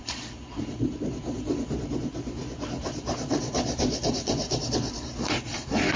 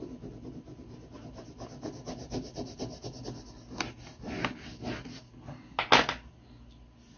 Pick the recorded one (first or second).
second